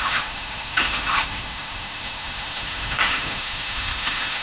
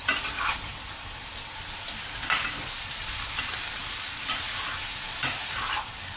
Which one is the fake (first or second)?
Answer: first